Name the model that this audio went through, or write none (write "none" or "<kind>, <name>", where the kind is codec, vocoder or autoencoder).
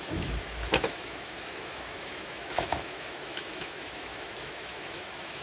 autoencoder, DAC-VAE